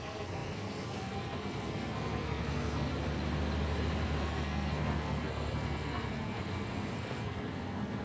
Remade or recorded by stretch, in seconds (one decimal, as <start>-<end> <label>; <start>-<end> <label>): 0.0-2.9 remade; 2.9-4.2 recorded; 4.2-8.0 remade

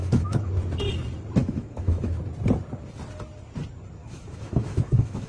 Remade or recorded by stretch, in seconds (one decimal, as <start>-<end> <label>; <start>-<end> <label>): 0.0-0.5 remade; 0.5-1.4 recorded; 1.4-2.1 remade; 2.1-4.0 recorded; 4.0-5.3 remade

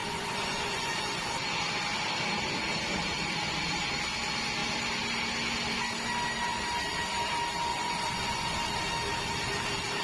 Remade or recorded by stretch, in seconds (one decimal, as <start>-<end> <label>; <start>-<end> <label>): 0.0-1.2 remade; 1.2-7.7 recorded; 7.7-8.5 remade; 8.5-10.0 recorded

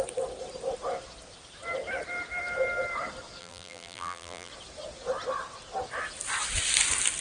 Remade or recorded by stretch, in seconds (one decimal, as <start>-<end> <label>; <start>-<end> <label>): 0.0-3.4 recorded; 3.4-4.5 remade; 4.5-7.2 recorded

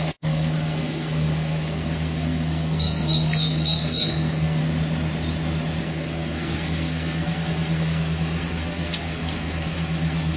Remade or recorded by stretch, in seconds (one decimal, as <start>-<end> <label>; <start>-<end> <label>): 0.0-4.6 remade; 4.6-5.8 recorded; 5.8-10.4 remade

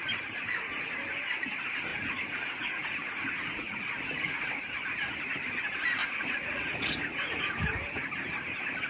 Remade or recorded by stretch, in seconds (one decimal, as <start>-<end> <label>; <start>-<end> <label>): 0.0-1.9 recorded; 1.9-4.7 remade; 4.7-6.0 recorded; 6.0-7.6 remade; 7.6-8.9 recorded

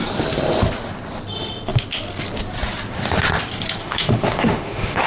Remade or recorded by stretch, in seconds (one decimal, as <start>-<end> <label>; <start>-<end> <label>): 0.0-3.8 recorded; 3.8-5.1 remade

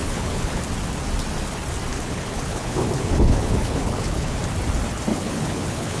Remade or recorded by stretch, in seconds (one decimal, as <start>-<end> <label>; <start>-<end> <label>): 0.0-0.6 remade; 0.6-1.9 recorded; 1.9-4.4 remade; 4.4-5.1 recorded; 5.1-6.0 remade